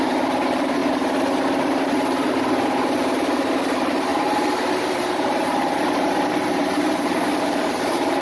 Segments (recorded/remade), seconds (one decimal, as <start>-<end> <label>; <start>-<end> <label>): 0.0-0.8 remade; 0.8-1.6 recorded; 1.6-8.2 remade